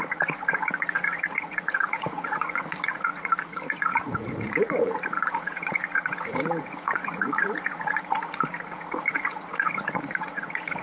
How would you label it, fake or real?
fake